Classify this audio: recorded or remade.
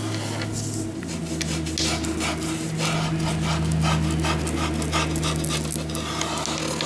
recorded